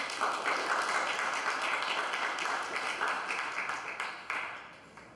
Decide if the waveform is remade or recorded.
recorded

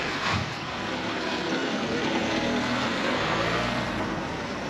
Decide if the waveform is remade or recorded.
remade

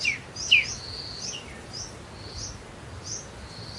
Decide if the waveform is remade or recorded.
recorded